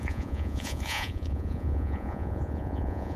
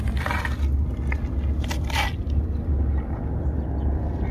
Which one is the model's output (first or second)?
first